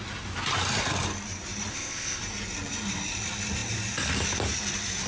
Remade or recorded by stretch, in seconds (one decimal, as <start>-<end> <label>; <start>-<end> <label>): 0.0-1.7 recorded; 1.7-2.2 remade; 2.2-5.1 recorded